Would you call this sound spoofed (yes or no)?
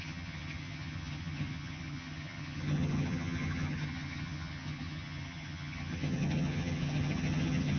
yes